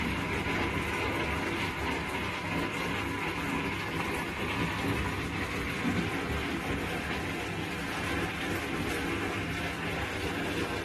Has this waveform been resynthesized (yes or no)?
no